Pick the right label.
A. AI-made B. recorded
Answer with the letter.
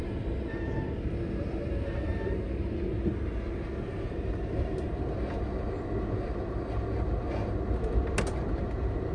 B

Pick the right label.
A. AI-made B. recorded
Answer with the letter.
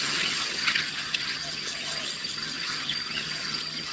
A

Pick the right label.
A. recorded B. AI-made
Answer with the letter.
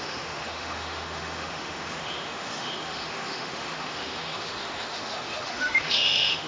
B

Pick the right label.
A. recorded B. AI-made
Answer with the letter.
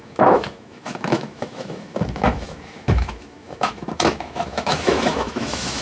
B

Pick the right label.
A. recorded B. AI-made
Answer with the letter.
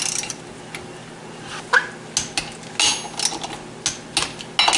A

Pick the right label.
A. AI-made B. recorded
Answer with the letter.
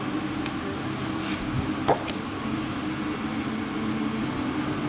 B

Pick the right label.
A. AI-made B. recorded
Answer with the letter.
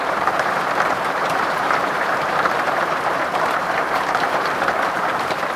A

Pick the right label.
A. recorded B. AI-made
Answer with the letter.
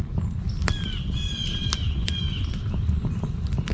A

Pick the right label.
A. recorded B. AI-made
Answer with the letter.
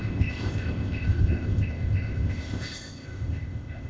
B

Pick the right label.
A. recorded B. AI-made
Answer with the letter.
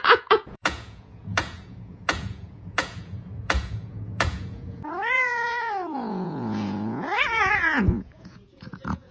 B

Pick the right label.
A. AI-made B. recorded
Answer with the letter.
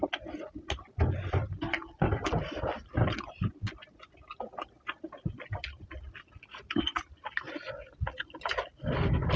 B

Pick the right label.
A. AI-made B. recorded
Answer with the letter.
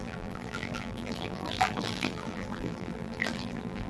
A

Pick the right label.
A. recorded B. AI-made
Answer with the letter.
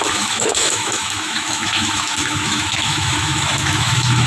B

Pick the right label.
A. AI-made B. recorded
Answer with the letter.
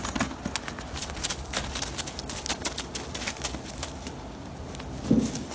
B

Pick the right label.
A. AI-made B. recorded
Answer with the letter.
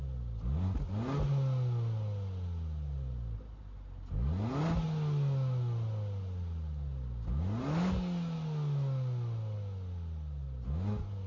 B